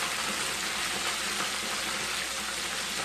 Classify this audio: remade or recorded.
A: recorded